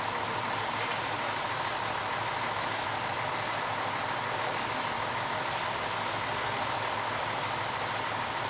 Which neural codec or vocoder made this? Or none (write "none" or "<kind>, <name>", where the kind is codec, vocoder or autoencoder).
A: none